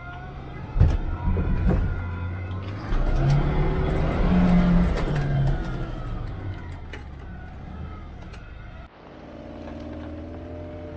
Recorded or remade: recorded